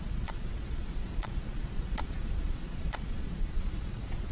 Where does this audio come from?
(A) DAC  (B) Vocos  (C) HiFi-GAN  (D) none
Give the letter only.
B